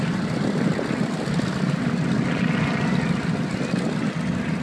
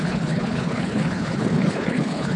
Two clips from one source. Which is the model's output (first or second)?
second